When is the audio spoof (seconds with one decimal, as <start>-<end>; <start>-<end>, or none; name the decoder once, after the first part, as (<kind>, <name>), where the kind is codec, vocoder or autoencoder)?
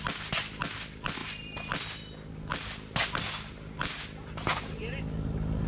none